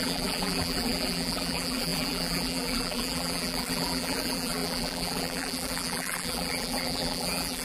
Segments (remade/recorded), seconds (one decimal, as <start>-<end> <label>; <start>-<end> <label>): 0.0-7.6 remade